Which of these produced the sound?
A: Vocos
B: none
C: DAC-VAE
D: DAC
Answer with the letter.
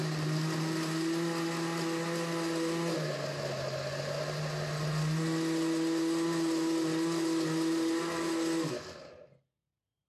B